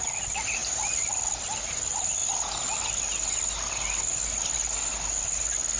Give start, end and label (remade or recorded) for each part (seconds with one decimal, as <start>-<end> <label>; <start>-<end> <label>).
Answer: 0.0-5.8 recorded